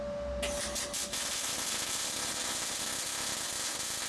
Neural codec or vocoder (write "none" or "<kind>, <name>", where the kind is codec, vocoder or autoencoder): none